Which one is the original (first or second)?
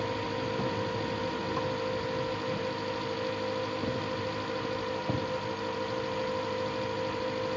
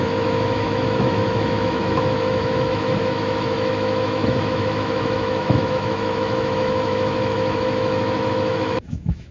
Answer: first